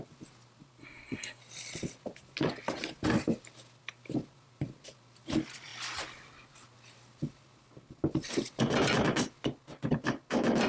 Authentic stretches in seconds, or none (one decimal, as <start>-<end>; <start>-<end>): 0.0-0.8; 1.4-10.7